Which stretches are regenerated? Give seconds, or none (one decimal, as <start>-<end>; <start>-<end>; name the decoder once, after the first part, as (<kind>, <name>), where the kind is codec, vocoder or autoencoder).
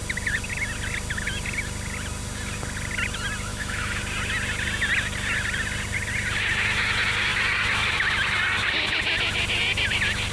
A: 3.5-4.0 (autoencoder, DAC-VAE)